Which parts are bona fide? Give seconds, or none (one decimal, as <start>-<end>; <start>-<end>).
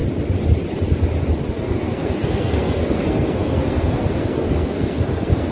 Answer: 0.0-1.5